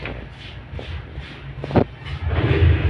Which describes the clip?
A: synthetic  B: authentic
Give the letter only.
B